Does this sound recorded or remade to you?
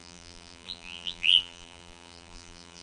remade